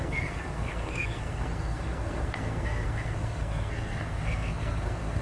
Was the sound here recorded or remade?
remade